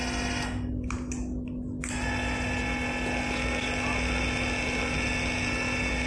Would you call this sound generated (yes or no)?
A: no